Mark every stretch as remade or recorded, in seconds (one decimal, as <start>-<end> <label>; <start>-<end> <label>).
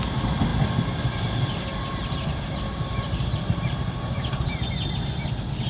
0.0-2.7 recorded; 2.7-4.7 remade; 4.7-5.7 recorded